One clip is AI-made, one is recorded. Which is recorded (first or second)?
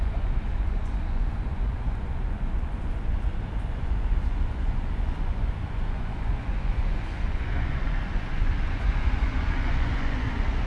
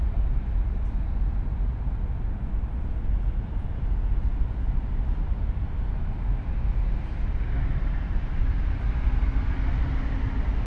second